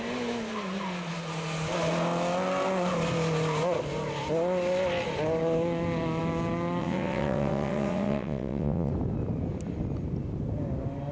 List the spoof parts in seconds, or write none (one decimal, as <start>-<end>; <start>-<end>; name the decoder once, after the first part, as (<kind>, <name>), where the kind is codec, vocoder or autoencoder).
6.8-8.9 (vocoder, WaveNeXt)

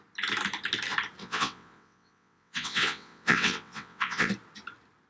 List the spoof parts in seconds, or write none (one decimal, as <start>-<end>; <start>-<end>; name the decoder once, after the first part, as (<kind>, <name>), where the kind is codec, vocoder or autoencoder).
1.2-4.3 (vocoder, WaveNeXt)

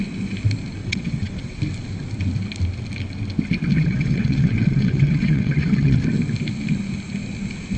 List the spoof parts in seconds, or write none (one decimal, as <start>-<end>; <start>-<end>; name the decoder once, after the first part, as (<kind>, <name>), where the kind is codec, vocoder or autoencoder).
0.8-1.6 (vocoder, WaveNeXt); 3.8-6.0

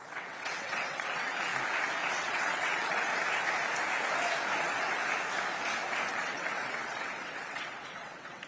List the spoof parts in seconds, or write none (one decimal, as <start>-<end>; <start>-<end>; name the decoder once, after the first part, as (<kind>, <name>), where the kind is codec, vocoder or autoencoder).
0.0-1.5 (vocoder, WaveNeXt); 2.1-3.1; 4.6-5.0; 6.1-8.5

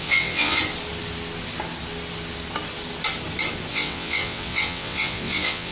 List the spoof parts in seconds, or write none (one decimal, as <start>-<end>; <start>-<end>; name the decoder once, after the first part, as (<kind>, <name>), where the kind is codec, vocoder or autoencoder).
0.0-0.6 (vocoder, WaveNeXt); 3.7-5.7